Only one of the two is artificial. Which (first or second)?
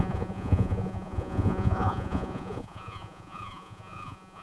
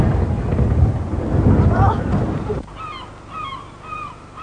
first